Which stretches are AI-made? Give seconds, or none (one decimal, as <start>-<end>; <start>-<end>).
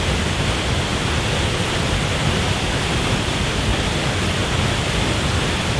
none